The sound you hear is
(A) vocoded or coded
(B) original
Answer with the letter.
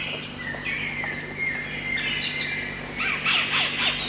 B